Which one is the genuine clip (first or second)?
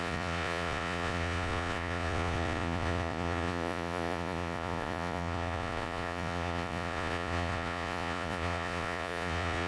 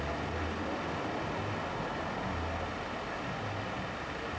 second